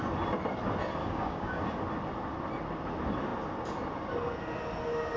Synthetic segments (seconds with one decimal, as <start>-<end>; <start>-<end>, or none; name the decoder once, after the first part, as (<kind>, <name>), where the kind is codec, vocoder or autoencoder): 1.0-1.6 (codec, DAC)